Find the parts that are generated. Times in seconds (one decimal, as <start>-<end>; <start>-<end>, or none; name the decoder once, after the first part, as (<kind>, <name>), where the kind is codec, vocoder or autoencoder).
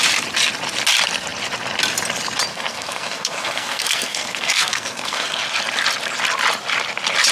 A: 2.5-5.4 (codec, SNAC)